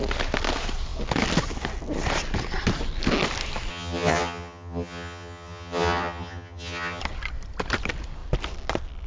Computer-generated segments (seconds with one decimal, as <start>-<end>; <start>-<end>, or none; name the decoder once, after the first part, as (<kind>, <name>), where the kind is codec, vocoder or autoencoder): 3.7-7.0 (vocoder, HiFi-GAN)